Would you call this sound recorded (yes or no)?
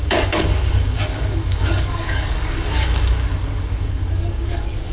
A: no